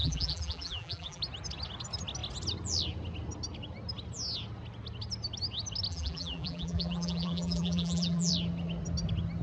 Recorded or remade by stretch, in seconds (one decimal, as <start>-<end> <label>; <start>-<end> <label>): 0.0-1.2 remade; 1.2-5.9 recorded; 5.9-8.3 remade; 8.3-9.4 recorded